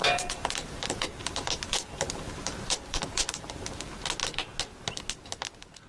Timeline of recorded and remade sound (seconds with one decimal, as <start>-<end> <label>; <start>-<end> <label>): 0.0-3.5 remade; 3.5-5.9 recorded